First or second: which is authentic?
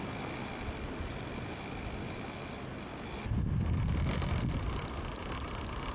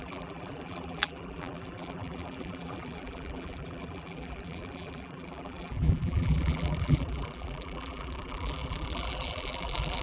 first